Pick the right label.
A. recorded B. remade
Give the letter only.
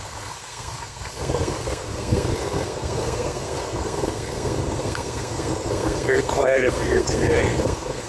B